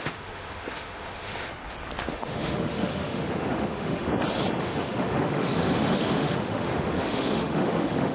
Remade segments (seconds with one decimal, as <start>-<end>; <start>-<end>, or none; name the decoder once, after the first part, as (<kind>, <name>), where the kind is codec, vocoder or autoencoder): 0.0-1.5 (autoencoder, DAC-VAE); 2.0-4.1; 4.6-8.1

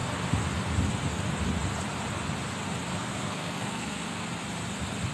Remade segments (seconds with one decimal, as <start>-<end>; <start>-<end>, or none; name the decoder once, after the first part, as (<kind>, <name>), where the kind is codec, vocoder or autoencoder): 2.9-4.3 (codec, SNAC)

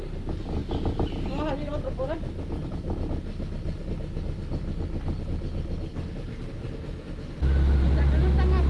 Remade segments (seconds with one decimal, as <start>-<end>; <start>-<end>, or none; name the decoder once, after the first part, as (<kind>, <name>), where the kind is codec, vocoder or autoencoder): none

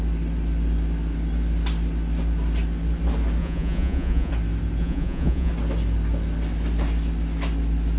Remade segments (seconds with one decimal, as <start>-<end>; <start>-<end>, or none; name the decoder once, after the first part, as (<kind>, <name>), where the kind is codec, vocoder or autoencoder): 3.4-4.3 (vocoder, Vocos); 4.8-5.5

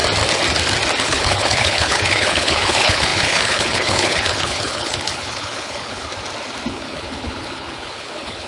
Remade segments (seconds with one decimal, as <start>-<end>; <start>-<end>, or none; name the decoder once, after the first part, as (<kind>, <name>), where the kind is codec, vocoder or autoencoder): 1.0-6.1 (codec, HILCodec); 6.7-8.5

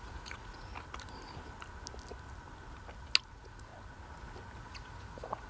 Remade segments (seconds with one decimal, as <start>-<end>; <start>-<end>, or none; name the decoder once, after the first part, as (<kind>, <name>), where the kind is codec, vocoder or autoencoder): 0.0-0.7 (vocoder, Vocos); 3.3-3.7; 4.6-5.5

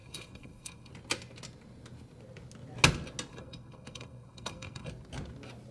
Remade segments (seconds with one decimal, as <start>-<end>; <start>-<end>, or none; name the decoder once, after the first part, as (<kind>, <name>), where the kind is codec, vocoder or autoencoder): 0.0-0.9 (codec, SNAC); 3.3-4.9

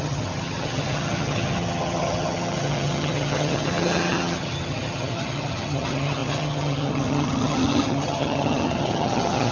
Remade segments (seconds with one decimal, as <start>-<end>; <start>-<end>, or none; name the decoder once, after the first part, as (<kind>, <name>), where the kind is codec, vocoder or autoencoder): 0.0-9.5 (vocoder, HiFi-GAN)